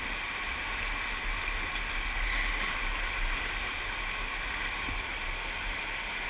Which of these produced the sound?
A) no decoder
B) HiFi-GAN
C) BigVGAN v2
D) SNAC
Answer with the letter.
A